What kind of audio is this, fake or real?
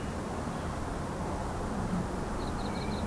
real